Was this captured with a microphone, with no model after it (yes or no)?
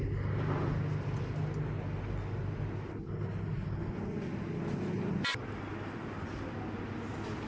yes